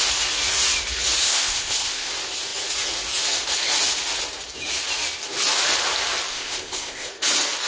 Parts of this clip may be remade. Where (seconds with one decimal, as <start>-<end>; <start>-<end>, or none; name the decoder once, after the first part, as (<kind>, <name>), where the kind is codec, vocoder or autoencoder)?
1.2-2.1 (codec, ZipCodec); 6.3-7.1